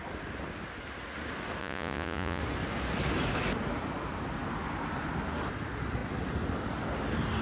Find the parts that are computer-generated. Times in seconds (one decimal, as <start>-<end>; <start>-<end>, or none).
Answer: 1.6-2.4